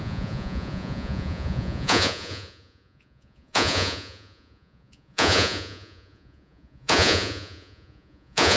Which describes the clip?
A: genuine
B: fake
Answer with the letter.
B